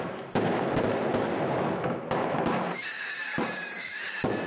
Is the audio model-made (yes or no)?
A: no